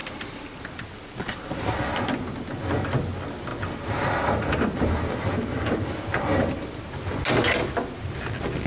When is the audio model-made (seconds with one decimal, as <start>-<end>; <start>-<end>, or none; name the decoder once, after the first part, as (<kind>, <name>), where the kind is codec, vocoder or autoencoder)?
0.0-1.6 (vocoder, BigVGAN v2)